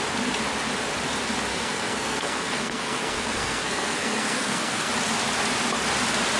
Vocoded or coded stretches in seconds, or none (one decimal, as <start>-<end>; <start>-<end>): 1.5-4.9